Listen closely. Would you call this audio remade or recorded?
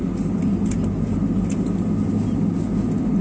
recorded